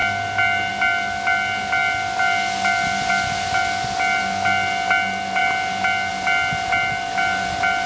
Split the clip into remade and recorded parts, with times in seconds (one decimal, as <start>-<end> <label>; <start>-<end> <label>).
0.0-7.9 recorded